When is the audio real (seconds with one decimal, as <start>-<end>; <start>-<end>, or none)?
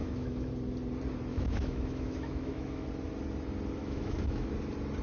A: 0.5-1.3; 2.9-3.8; 4.5-5.0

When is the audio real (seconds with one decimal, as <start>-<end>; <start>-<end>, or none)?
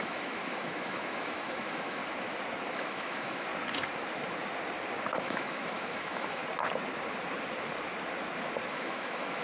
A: 2.0-2.7; 3.5-5.2; 6.4-8.7